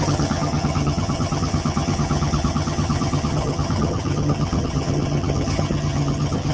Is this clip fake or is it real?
fake